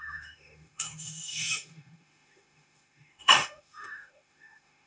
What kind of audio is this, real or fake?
fake